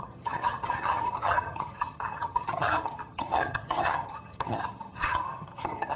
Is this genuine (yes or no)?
no